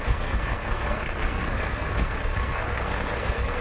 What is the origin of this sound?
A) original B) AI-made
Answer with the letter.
B